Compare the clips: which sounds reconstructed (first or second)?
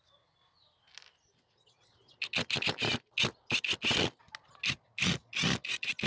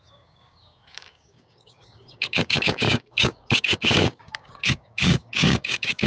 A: second